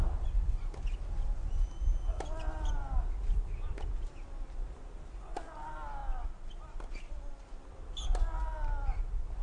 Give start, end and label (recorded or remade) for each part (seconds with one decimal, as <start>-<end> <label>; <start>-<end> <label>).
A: 0.0-6.0 recorded; 6.0-7.7 remade; 7.7-9.4 recorded